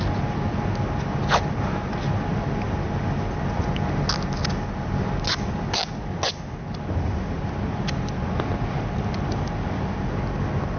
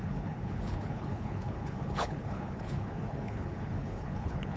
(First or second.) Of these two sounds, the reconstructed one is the second